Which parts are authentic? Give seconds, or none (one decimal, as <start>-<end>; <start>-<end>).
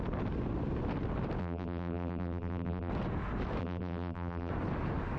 0.0-1.4; 2.9-3.6; 4.5-5.2